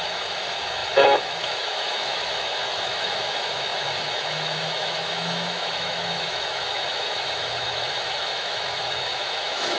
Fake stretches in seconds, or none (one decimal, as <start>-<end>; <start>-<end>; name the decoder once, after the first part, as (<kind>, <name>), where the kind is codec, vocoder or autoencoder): 0.0-9.8 (autoencoder, DAC-VAE)